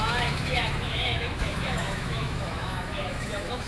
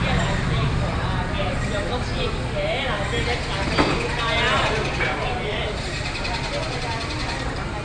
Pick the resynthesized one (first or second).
first